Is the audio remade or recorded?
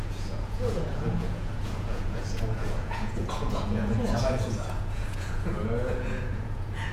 remade